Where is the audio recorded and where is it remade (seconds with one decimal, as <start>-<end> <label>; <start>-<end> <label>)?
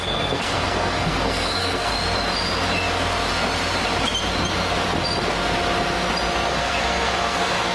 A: 0.0-1.9 remade; 1.9-6.5 recorded; 6.5-7.7 remade